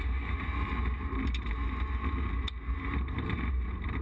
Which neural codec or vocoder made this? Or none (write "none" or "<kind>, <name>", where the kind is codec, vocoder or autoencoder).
vocoder, BigVGAN v2